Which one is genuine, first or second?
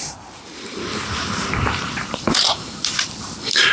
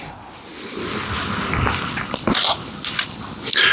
second